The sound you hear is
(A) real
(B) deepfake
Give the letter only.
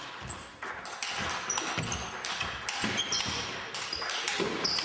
A